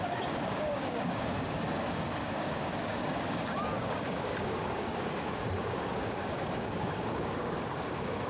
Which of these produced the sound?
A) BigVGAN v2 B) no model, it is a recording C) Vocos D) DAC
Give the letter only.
D